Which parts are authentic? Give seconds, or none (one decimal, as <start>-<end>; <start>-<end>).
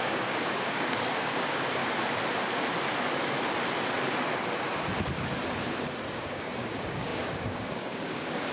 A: 1.8-6.1